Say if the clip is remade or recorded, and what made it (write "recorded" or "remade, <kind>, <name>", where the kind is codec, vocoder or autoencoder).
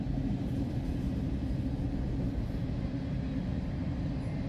recorded